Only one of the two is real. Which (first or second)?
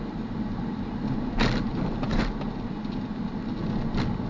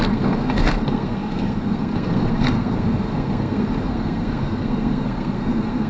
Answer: first